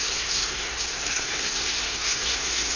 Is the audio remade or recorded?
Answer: remade